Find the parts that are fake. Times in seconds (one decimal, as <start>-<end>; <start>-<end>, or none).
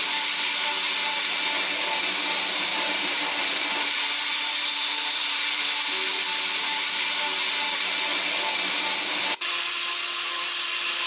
2.7-5.6